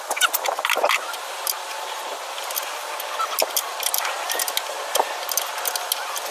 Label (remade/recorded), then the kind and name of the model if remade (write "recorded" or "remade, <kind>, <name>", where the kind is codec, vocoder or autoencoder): recorded